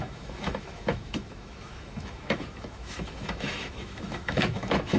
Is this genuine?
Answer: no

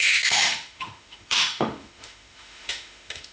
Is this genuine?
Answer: no